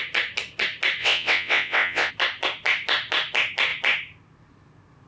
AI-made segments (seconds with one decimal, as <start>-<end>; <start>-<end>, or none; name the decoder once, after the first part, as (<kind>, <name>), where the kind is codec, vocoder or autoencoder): 1.0-2.1 (vocoder, WaveNeXt)